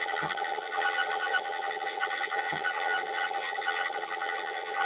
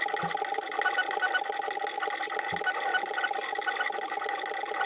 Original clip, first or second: second